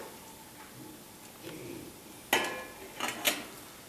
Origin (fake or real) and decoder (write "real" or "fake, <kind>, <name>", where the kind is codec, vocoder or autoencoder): real